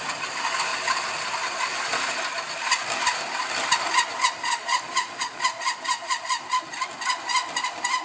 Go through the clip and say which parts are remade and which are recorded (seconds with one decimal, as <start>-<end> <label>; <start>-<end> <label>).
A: 0.0-4.4 recorded; 4.4-6.2 remade; 6.2-8.0 recorded